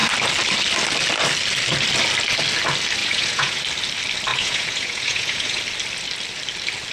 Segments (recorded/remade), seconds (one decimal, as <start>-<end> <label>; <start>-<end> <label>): 0.0-3.0 recorded; 3.0-3.6 remade; 3.6-4.3 recorded; 4.3-5.6 remade; 5.6-6.9 recorded